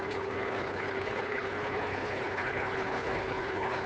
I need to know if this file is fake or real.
fake